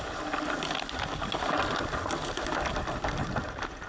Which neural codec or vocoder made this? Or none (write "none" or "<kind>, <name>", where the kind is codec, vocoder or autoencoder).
none